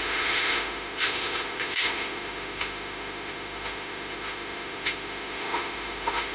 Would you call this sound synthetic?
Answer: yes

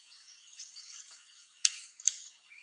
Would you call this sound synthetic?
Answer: yes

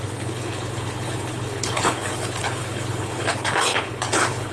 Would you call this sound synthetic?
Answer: yes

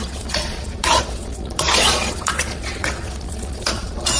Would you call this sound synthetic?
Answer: yes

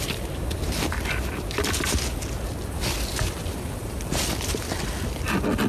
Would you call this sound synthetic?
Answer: no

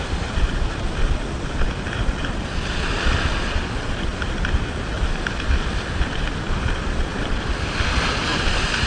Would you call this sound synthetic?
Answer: no